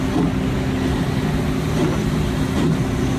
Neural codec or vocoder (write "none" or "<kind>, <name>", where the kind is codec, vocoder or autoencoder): none